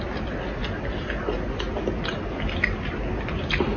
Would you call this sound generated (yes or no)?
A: no